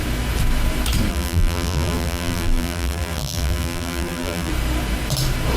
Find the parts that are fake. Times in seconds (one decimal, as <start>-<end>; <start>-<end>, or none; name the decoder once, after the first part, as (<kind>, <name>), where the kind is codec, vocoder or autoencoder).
1.1-4.5 (vocoder, BigVGAN v2)